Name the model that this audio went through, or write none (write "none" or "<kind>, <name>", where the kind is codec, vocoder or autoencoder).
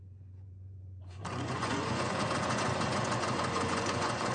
vocoder, Vocos